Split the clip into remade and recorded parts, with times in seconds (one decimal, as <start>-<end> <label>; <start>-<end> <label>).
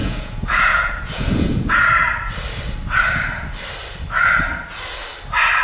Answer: 0.0-1.7 remade; 1.7-5.6 recorded